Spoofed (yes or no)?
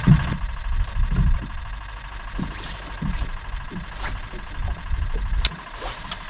no